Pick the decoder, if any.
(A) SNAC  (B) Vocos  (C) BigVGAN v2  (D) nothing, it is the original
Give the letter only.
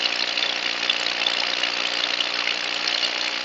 D